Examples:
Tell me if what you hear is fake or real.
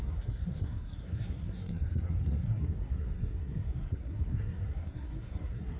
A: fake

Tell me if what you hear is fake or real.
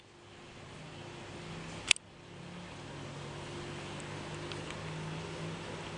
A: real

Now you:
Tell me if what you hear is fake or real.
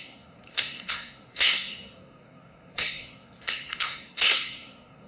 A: fake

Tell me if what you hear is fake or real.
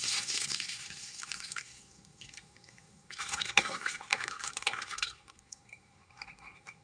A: fake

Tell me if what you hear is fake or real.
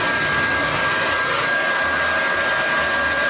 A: real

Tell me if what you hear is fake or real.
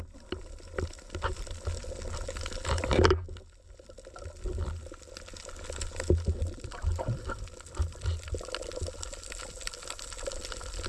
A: real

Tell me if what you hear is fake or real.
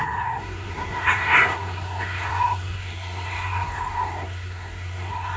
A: fake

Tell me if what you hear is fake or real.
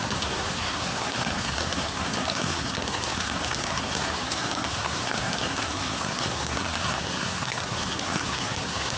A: fake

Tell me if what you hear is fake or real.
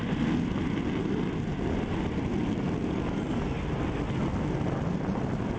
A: real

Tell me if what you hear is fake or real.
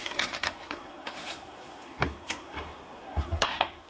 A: fake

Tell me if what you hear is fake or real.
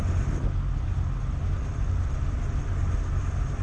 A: real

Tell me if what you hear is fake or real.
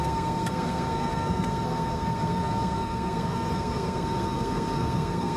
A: fake